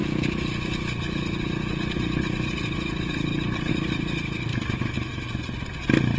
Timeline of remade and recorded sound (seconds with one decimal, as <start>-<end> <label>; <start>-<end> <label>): 0.0-4.5 recorded; 4.5-5.4 remade; 5.4-6.2 recorded